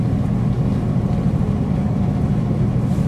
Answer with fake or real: real